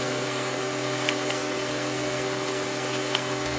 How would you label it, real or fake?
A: fake